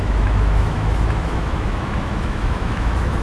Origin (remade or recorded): remade